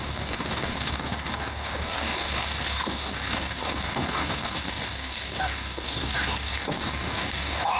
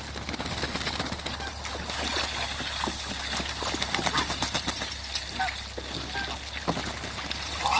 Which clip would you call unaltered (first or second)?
second